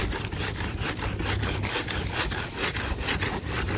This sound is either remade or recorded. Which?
recorded